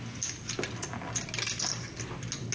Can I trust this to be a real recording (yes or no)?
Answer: yes